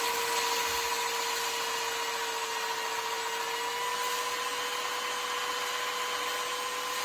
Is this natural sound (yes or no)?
yes